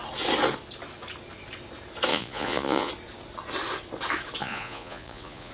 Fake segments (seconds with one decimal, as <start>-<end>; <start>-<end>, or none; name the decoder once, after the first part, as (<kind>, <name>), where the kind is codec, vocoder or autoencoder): 2.1-2.9 (vocoder, Vocos); 4.4-5.5